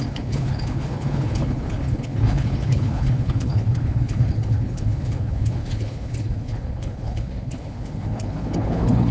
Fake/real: fake